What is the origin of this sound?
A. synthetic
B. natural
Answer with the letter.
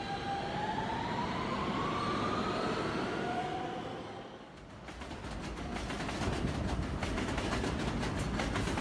B